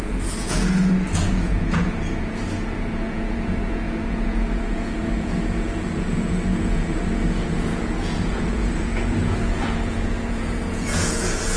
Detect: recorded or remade remade